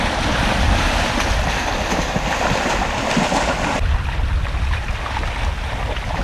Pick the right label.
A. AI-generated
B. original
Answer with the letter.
B